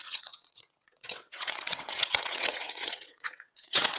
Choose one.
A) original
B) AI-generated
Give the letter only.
B